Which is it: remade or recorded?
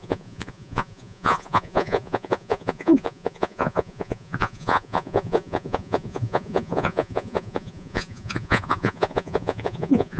remade